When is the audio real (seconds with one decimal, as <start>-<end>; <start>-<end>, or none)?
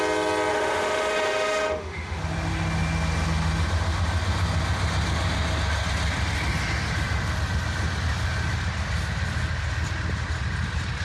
0.0-0.5; 2.2-11.0